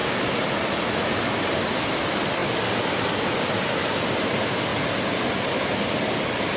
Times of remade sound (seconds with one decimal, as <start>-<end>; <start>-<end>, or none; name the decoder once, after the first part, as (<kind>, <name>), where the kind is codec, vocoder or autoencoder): none